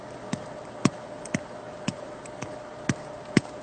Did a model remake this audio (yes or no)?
no